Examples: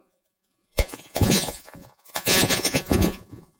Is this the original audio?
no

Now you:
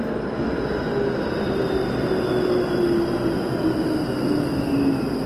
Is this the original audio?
yes